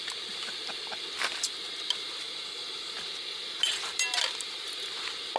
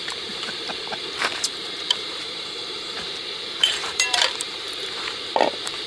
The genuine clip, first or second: first